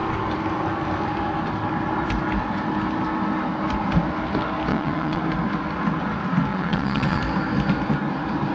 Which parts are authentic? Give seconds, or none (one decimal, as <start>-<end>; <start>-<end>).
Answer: 0.0-4.7; 5.2-6.5; 7.2-8.5